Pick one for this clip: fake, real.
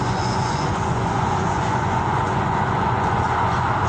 fake